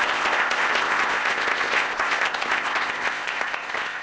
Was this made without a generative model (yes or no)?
no